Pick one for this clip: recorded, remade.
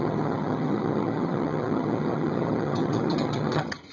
remade